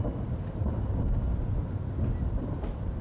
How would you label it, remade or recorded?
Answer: recorded